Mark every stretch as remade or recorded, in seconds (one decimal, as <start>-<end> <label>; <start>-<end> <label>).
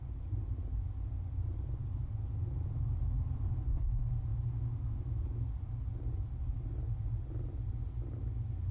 0.0-8.7 recorded